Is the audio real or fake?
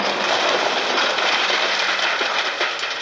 real